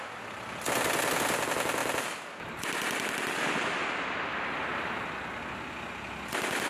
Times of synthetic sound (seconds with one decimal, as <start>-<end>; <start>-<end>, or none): none